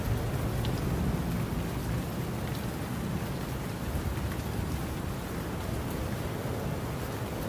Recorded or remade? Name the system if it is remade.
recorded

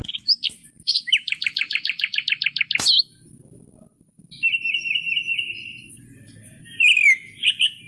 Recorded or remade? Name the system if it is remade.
remade, vocoder, BigVGAN v2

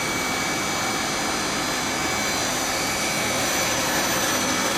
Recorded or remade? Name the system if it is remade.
recorded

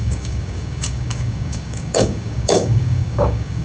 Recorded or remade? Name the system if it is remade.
remade, codec, DAC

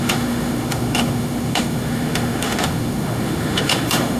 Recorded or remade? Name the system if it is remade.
remade, autoencoder, DAC-VAE